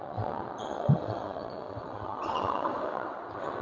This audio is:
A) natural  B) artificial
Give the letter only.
B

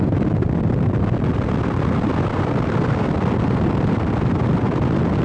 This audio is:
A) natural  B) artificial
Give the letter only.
A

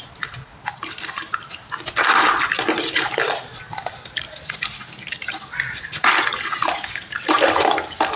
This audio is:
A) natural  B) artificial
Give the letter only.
A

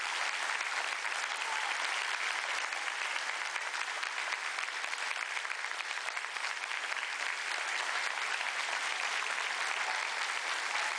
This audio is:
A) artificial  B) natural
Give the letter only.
B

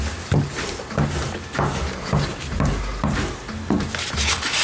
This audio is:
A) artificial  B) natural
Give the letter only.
B